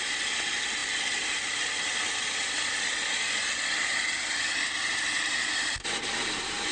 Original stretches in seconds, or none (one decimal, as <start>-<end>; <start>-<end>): 0.0-6.7